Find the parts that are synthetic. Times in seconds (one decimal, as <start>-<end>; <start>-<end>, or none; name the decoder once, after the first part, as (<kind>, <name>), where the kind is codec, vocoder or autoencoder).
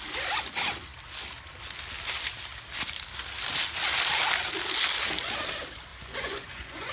5.9-6.9 (vocoder, Vocos)